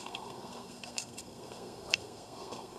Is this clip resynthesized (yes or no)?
yes